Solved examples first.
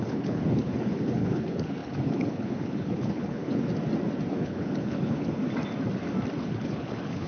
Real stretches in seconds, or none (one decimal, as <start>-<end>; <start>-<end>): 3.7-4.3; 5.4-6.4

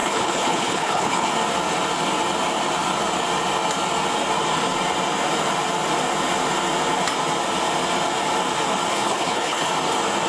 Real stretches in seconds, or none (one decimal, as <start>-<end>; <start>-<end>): 1.3-8.9; 9.7-10.3

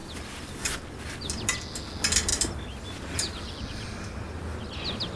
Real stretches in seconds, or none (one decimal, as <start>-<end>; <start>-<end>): 0.0-5.2